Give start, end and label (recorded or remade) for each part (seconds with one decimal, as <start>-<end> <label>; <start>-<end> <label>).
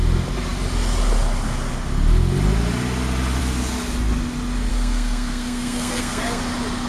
0.0-4.7 recorded; 4.7-6.4 remade; 6.4-6.9 recorded